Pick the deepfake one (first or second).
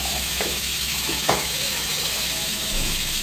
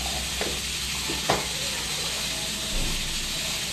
first